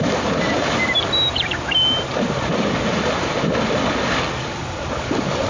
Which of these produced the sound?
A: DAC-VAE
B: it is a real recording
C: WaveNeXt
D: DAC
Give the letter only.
B